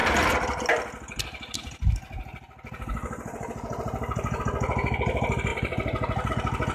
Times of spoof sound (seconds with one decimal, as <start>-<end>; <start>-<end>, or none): 3.0-4.4